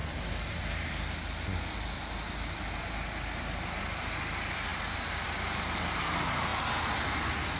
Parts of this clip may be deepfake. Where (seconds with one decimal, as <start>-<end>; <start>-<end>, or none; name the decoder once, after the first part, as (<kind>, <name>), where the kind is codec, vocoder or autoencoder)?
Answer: none